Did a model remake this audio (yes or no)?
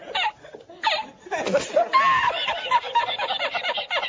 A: no